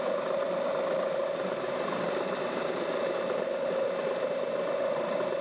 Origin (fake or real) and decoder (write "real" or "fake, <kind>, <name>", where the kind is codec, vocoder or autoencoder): fake, vocoder, BigVGAN v2